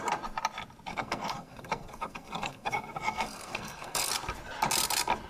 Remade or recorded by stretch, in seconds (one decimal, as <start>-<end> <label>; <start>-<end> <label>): 0.0-0.9 recorded; 0.9-4.1 remade; 4.1-5.3 recorded